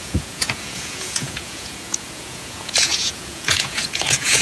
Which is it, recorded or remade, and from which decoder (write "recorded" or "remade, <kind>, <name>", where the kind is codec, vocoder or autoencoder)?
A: remade, vocoder, Vocos